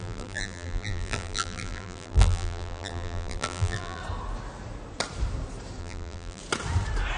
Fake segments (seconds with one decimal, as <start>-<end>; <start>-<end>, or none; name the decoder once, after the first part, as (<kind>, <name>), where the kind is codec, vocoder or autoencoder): 0.0-4.0 (vocoder, BigVGAN v2); 5.8-6.4